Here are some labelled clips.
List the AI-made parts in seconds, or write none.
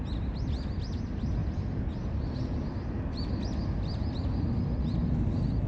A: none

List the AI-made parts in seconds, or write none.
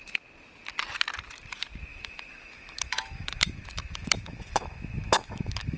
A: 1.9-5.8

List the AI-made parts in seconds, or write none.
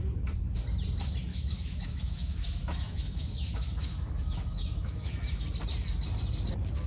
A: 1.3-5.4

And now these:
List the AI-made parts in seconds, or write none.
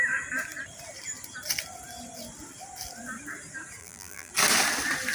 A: 3.8-4.3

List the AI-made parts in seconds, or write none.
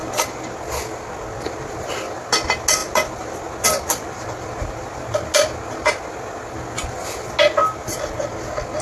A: none